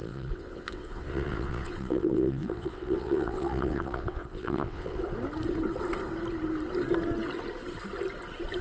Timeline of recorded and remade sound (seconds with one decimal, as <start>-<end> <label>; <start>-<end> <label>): 0.0-5.0 remade; 5.0-8.6 recorded